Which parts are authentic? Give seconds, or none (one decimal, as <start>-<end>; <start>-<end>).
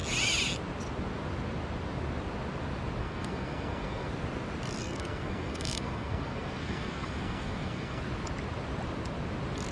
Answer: 0.0-3.0; 4.1-4.8; 8.0-9.7